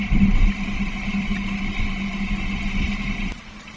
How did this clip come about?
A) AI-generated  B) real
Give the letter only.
B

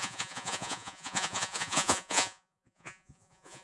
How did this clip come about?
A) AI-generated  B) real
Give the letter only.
A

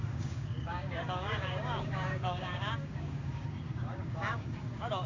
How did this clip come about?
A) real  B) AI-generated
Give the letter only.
B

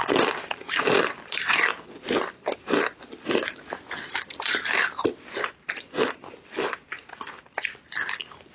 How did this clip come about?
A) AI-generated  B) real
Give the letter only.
B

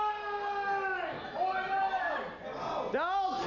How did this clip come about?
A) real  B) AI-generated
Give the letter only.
A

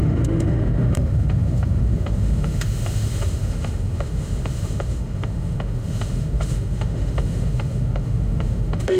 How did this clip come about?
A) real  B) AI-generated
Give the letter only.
B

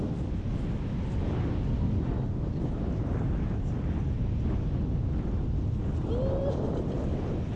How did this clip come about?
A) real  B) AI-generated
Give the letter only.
A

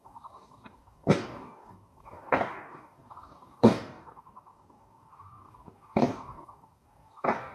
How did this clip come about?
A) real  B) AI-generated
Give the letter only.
B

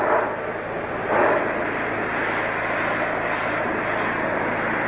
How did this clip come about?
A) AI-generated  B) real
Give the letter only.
B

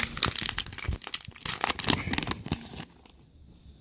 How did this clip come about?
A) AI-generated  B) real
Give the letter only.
B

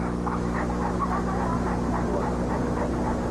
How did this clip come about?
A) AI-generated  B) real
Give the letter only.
B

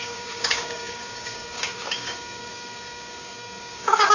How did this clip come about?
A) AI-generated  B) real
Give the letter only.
A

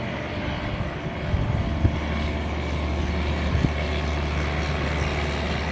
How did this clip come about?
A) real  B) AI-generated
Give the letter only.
A